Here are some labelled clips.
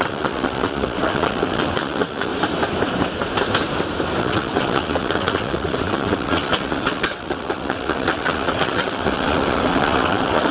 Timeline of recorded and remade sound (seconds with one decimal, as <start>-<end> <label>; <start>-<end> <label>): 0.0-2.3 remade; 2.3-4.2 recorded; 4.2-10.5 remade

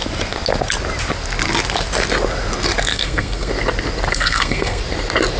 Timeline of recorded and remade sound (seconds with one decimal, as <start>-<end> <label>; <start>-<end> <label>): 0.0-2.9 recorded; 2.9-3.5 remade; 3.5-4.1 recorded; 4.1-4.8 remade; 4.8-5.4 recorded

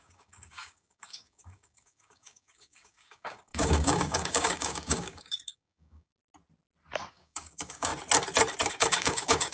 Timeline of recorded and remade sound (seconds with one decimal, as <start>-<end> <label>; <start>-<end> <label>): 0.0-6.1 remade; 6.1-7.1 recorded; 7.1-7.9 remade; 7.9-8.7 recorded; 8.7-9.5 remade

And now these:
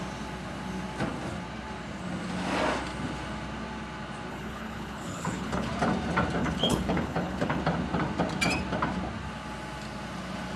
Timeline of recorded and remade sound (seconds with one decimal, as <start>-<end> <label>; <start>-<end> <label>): 0.0-4.3 recorded; 4.3-5.7 remade; 5.7-6.4 recorded; 6.4-7.6 remade; 7.6-10.6 recorded